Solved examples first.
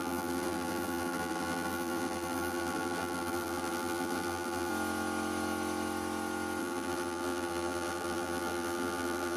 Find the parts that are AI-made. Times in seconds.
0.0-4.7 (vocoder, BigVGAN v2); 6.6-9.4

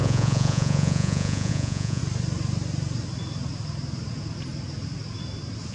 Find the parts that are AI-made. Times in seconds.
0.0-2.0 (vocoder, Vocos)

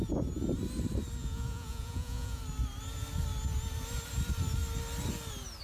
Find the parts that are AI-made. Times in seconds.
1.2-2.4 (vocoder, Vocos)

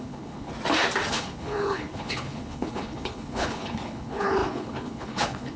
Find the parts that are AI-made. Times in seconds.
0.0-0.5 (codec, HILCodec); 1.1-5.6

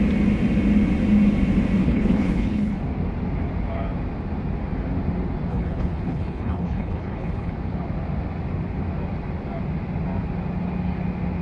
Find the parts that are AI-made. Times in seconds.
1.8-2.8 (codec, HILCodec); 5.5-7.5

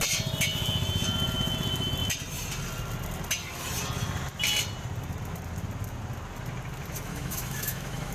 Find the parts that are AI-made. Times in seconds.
7.1-8.1 (autoencoder, DAC-VAE)

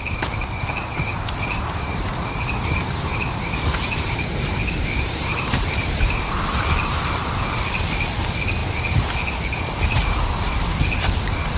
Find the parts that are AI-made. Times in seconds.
1.1-6.1 (vocoder, BigVGAN v2)

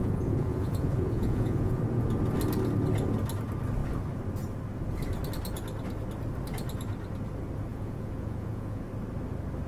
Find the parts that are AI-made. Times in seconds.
0.0-1.8 (vocoder, Vocos); 7.7-8.8